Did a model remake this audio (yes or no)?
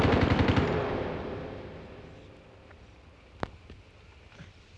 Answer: no